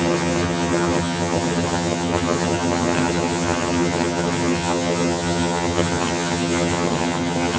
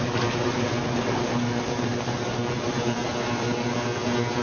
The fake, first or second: first